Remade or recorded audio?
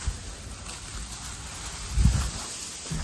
recorded